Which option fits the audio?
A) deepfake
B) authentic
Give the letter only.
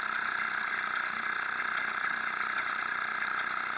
B